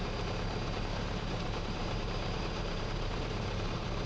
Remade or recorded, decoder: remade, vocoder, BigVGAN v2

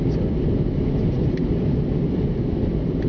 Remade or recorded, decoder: remade, vocoder, BigVGAN v2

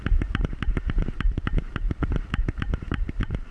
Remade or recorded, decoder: remade, vocoder, BigVGAN v2